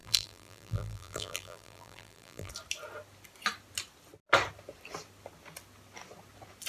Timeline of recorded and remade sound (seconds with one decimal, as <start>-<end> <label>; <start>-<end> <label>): 0.0-2.5 remade; 2.5-6.7 recorded